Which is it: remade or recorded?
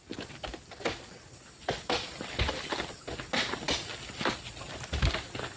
recorded